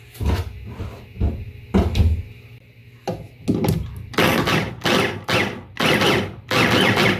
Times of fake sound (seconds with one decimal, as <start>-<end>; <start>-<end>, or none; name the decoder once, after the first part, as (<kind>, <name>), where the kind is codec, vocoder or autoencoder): none